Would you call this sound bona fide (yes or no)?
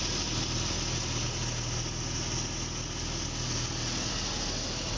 yes